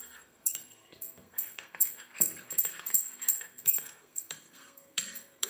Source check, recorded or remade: remade